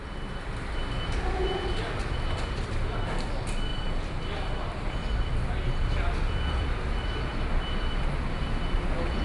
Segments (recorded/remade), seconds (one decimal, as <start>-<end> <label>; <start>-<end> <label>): 0.0-1.4 recorded; 1.4-3.0 remade; 3.0-3.7 recorded; 3.7-6.8 remade; 6.8-7.3 recorded; 7.3-8.1 remade; 8.1-9.2 recorded